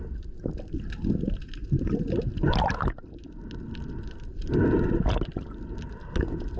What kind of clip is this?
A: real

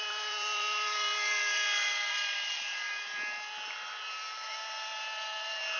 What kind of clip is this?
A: fake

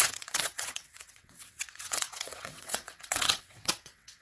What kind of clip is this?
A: fake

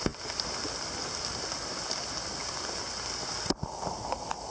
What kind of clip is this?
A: real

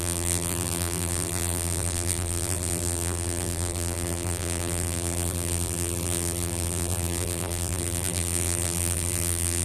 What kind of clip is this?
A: fake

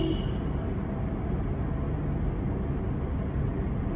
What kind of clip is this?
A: real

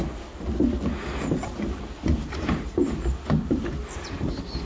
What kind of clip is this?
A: real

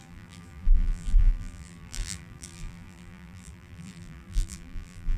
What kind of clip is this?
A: fake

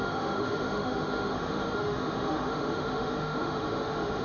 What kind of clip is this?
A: fake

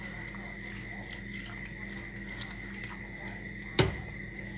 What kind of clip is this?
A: real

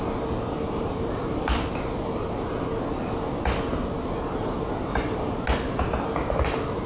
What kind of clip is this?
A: real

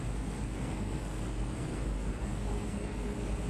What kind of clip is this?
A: fake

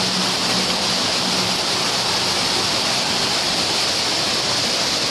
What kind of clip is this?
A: real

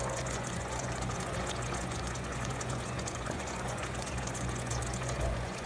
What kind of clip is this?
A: fake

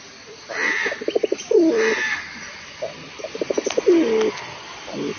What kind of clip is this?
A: real